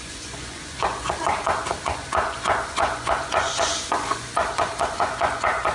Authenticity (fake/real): fake